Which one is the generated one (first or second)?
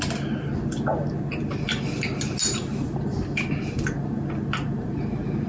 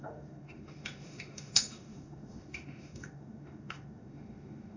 second